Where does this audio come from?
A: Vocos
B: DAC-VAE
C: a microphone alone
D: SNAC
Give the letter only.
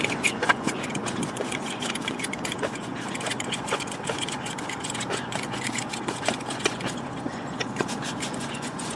A